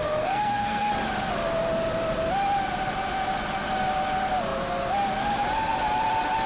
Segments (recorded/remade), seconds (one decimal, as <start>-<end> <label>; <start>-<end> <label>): 0.0-0.9 remade; 0.9-6.5 recorded